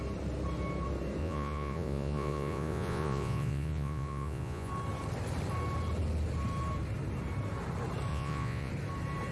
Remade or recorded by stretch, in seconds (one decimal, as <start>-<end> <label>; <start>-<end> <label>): 0.0-1.2 recorded; 1.2-4.7 remade; 4.7-8.1 recorded; 8.1-8.7 remade; 8.7-9.3 recorded